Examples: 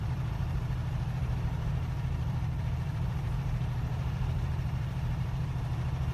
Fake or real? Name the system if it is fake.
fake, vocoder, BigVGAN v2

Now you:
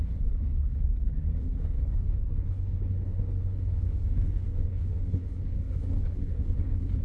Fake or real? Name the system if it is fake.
fake, codec, HILCodec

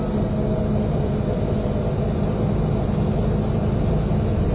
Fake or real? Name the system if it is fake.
real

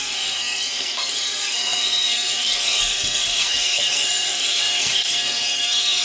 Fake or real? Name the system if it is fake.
fake, codec, SNAC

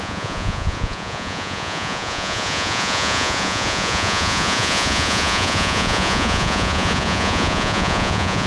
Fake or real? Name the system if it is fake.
fake, vocoder, Vocos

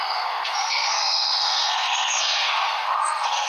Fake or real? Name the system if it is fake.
fake, codec, SNAC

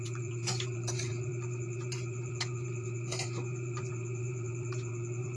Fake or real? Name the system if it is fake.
fake, vocoder, Vocos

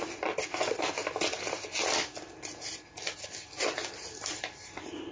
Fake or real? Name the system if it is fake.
real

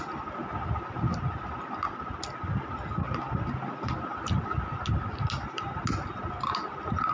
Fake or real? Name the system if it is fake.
real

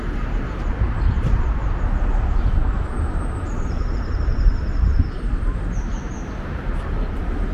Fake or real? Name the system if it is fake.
fake, vocoder, BigVGAN v2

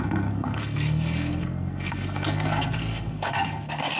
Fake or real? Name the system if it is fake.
fake, codec, SNAC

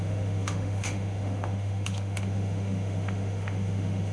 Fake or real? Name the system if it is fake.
fake, autoencoder, DAC-VAE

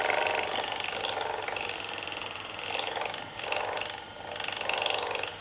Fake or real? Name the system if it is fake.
real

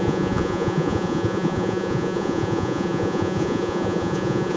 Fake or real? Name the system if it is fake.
fake, vocoder, Vocos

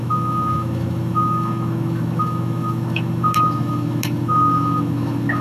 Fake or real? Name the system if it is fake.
fake, autoencoder, DAC-VAE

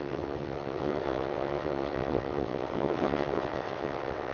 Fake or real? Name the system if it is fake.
fake, vocoder, WaveNeXt